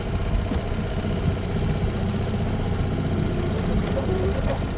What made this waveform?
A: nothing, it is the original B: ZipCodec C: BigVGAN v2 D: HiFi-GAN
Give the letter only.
A